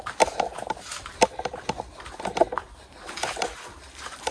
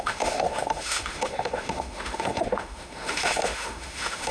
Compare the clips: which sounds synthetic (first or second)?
second